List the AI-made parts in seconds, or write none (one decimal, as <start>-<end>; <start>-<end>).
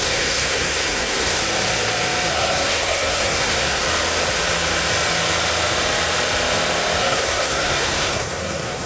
0.0-1.4; 2.3-3.8; 7.0-8.9